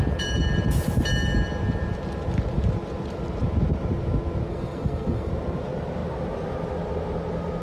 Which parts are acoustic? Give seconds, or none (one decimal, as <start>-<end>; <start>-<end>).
0.0-4.5; 5.3-7.6